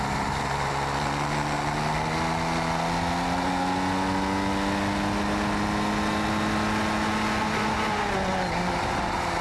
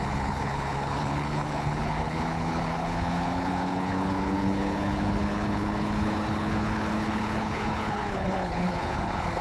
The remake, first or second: second